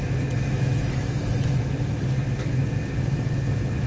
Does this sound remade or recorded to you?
remade